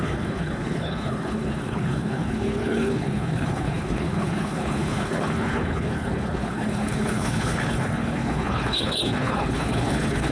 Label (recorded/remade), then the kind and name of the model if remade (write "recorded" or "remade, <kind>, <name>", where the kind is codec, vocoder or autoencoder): remade, codec, HILCodec